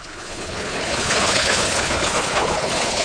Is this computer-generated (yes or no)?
yes